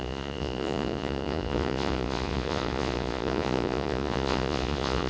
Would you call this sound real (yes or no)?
no